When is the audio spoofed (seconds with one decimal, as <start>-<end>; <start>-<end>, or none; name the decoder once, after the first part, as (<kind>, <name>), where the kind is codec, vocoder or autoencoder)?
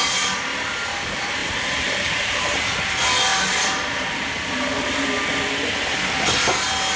1.4-2.9 (vocoder, BigVGAN v2); 3.3-4.3